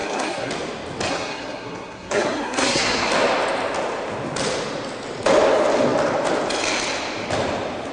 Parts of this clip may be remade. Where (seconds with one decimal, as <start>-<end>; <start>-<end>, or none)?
0.0-0.5; 1.1-3.1